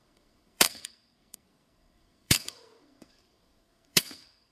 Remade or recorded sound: remade